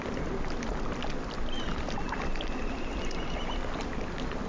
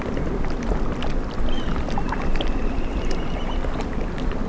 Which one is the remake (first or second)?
second